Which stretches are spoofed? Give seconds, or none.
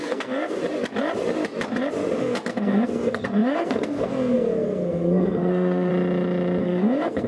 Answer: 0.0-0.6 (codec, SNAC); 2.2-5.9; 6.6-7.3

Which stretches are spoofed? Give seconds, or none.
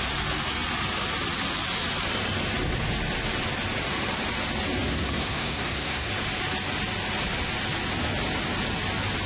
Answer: 4.9-6.1 (codec, SNAC)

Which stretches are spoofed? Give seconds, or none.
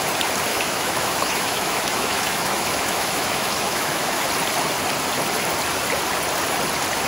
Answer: 0.5-4.2 (autoencoder, DAC-VAE)